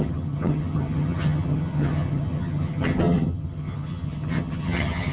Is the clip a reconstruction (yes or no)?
yes